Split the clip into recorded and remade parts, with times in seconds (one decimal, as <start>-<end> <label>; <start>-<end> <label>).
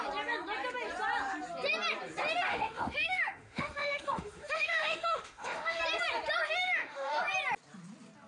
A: 0.0-2.5 recorded; 2.5-5.8 remade; 5.8-6.6 recorded; 6.6-7.2 remade; 7.2-8.3 recorded